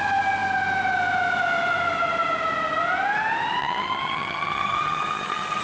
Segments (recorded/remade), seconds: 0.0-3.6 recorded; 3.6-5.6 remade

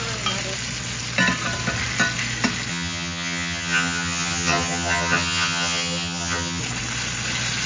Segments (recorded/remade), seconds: 0.0-2.7 recorded; 2.7-6.6 remade; 6.6-7.7 recorded

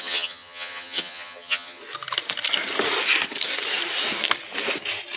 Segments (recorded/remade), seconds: 0.0-1.8 remade; 1.8-5.2 recorded

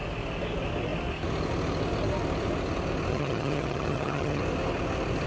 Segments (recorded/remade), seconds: 0.0-3.1 recorded; 3.1-4.4 remade; 4.4-5.3 recorded

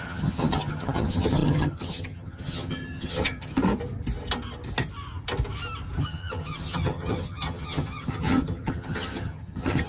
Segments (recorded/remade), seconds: 0.0-3.6 remade; 3.6-6.0 recorded; 6.0-9.9 remade

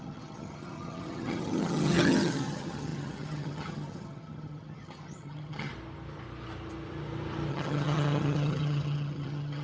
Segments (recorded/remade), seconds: 0.0-5.7 remade; 5.7-7.5 recorded; 7.5-9.6 remade

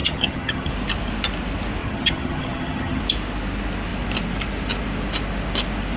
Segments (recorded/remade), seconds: 0.0-0.7 remade; 0.7-1.8 recorded; 1.8-3.0 remade; 3.0-6.0 recorded